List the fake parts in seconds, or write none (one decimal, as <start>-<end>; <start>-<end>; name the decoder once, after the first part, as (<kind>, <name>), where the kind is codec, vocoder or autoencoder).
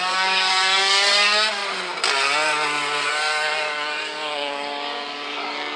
0.0-1.6 (codec, DAC); 3.1-5.8